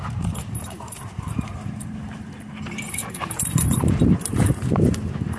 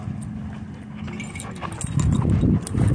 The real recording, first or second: second